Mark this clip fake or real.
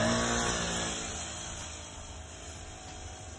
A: real